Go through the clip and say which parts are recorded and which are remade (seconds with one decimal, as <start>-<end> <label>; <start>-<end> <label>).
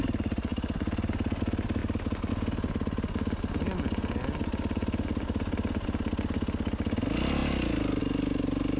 0.0-8.8 recorded